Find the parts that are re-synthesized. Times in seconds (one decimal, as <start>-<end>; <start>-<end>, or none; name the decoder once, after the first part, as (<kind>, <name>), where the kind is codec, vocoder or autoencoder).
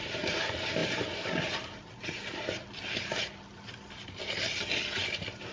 none